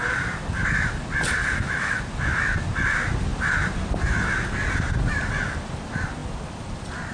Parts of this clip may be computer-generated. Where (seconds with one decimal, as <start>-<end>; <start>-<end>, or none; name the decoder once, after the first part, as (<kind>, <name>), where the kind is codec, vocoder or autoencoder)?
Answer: 1.4-2.0 (autoencoder, DAC-VAE)

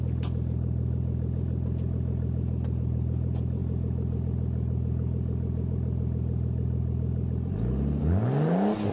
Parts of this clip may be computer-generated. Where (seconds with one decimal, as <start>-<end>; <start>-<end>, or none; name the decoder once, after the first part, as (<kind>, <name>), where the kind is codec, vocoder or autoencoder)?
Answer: none

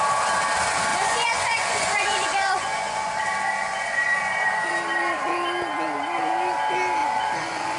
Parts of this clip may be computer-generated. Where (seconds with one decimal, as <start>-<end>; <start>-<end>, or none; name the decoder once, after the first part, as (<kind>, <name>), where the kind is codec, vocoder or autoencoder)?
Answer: 0.9-3.2 (vocoder, Vocos); 3.6-4.7; 7.0-7.8